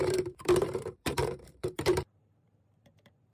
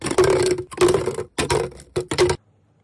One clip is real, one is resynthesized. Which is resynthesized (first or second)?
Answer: first